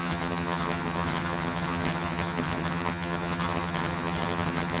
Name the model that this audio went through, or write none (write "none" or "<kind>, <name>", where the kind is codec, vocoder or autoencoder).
vocoder, HiFi-GAN